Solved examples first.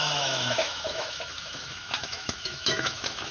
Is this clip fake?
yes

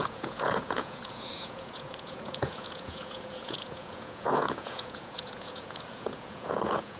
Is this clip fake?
yes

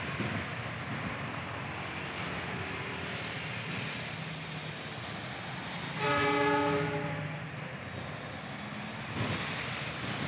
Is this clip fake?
no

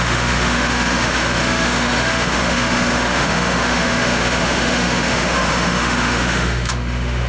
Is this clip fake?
yes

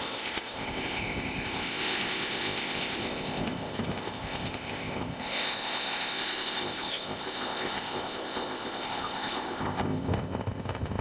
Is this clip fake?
yes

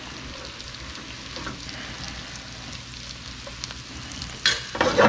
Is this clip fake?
no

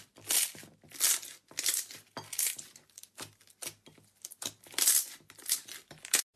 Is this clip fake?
no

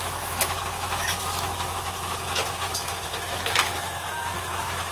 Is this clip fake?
yes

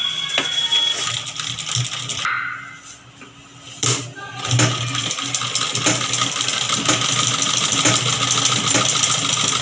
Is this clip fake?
no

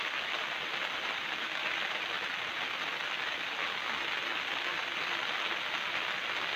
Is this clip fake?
no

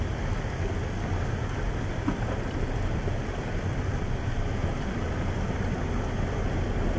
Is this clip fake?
no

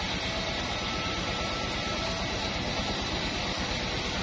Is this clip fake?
no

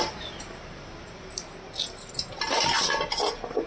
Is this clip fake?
no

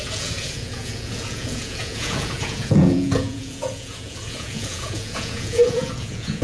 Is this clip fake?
yes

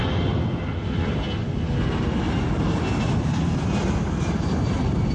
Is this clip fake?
no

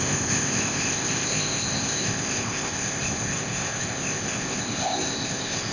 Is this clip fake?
yes